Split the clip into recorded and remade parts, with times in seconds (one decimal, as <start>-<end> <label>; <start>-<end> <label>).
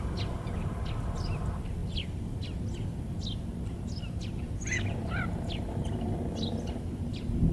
0.0-7.5 recorded